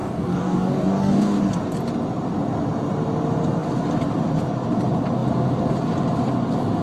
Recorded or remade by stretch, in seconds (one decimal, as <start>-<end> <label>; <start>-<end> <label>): 0.0-1.4 remade; 1.4-6.8 recorded